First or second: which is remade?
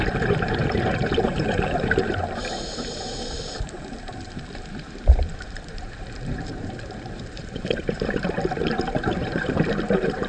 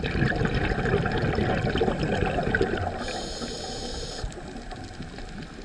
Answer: first